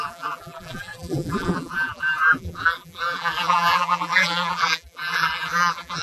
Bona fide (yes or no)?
no